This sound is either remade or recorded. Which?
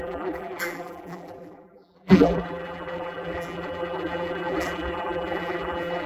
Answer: remade